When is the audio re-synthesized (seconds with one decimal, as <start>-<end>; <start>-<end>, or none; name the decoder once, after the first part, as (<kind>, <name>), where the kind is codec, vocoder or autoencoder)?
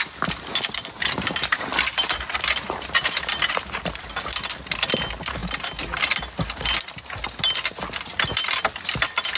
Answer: none